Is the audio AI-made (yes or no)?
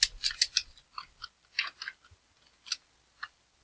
no